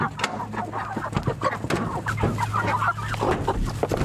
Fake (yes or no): no